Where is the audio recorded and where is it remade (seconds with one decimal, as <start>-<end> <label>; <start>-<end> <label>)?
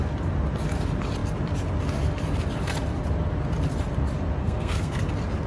0.0-4.4 recorded; 4.4-5.0 remade; 5.0-5.5 recorded